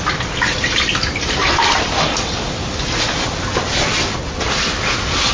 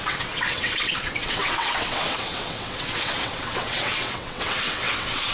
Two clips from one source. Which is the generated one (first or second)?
second